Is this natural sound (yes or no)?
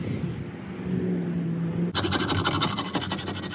yes